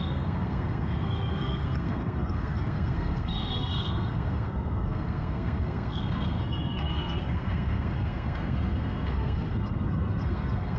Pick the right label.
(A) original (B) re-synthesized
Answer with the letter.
B